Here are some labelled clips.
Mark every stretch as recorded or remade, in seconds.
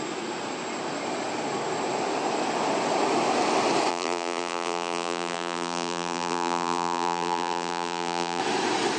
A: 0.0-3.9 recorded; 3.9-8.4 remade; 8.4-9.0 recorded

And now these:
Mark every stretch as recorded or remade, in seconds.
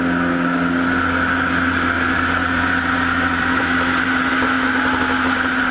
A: 0.0-2.4 recorded; 2.4-4.3 remade; 4.3-5.7 recorded